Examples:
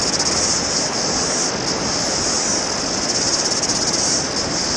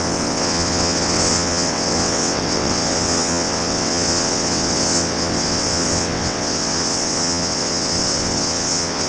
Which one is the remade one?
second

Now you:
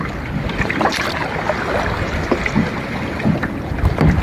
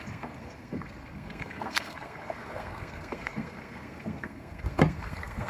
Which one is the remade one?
second